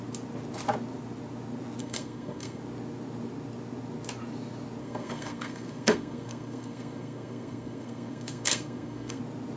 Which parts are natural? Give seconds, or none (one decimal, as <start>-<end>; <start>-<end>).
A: 0.0-1.8; 2.6-4.8; 9.2-9.6